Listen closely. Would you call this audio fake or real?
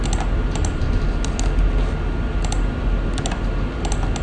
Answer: real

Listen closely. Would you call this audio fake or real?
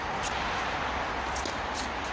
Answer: real